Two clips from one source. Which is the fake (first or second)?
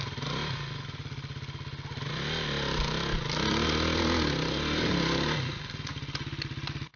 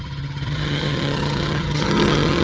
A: second